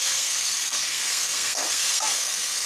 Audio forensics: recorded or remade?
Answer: remade